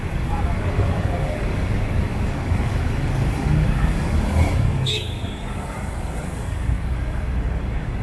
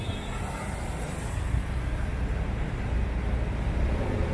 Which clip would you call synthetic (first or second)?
first